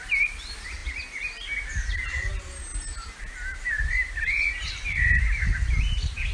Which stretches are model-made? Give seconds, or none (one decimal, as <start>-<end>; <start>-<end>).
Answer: 0.0-2.7; 3.2-6.3